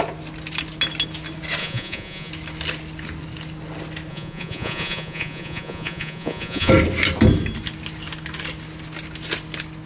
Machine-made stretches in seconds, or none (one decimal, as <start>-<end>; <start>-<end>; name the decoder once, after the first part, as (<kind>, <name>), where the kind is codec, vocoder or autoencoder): 1.6-2.3 (vocoder, Vocos); 4.1-6.7

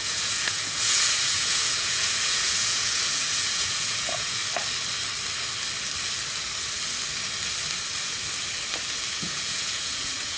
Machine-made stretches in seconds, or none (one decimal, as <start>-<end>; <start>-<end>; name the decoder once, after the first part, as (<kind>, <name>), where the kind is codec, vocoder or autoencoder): 0.0-4.4 (vocoder, Vocos); 9.1-10.4

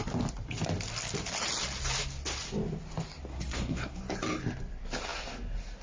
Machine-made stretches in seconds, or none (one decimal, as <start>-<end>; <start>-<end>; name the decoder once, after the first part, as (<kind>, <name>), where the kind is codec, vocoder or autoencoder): 3.3-4.0 (codec, SNAC)

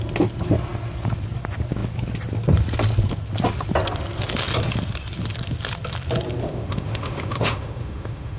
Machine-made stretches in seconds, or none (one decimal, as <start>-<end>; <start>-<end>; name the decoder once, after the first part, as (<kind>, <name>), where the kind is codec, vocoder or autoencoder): 6.4-8.4 (autoencoder, DAC-VAE)

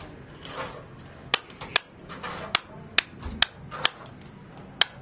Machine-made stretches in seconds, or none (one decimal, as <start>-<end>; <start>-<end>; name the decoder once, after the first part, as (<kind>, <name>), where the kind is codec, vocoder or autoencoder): none

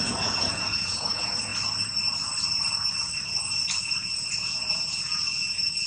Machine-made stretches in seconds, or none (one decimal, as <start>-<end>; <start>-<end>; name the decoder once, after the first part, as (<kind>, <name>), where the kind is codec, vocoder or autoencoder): 0.0-1.5 (vocoder, Vocos); 3.8-5.9